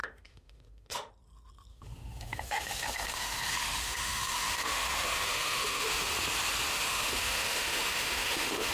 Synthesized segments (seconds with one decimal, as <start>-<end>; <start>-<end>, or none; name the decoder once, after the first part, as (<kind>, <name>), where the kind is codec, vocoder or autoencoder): 0.0-1.1 (autoencoder, DAC-VAE); 1.7-6.1; 6.7-8.7